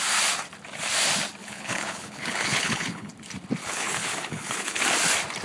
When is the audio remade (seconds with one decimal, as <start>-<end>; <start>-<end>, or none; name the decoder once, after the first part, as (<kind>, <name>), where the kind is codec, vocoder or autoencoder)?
1.4-3.1 (codec, HILCodec); 3.6-4.8